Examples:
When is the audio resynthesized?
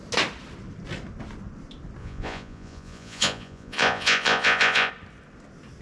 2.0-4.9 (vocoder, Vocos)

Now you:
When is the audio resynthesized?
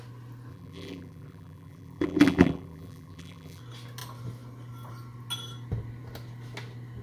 0.5-3.6 (vocoder, BigVGAN v2)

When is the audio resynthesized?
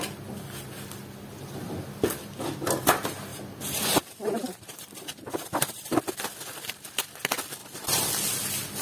3.3-6.0 (vocoder, BigVGAN v2); 7.6-8.1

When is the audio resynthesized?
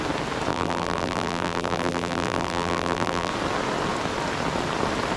0.5-3.3 (vocoder, BigVGAN v2)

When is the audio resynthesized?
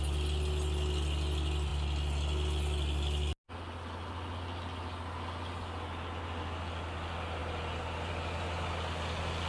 none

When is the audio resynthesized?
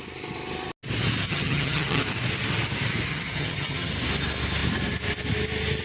1.2-2.0 (vocoder, HiFi-GAN); 3.1-3.9